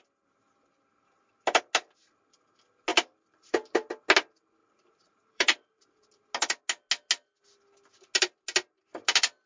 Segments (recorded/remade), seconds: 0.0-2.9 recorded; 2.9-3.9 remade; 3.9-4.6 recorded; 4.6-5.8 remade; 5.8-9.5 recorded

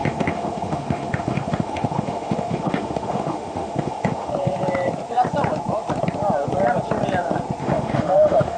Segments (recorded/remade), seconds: 0.0-4.3 remade; 4.3-7.6 recorded; 7.6-8.6 remade